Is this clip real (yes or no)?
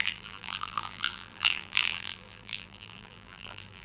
no